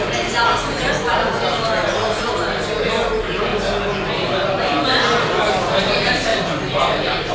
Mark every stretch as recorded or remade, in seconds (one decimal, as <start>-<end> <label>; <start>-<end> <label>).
0.0-7.3 recorded